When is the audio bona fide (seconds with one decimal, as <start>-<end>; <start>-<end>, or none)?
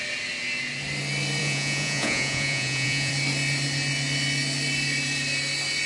0.0-1.4; 3.1-5.9